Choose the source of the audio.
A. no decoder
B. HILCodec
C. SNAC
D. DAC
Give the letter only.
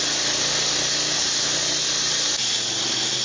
A